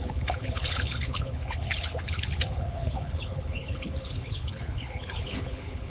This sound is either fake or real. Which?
fake